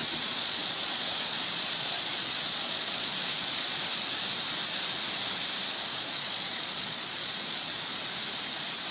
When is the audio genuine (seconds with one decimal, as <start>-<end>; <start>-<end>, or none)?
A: 3.8-5.9; 7.8-8.9